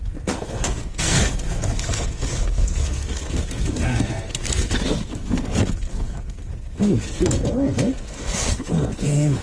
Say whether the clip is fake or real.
fake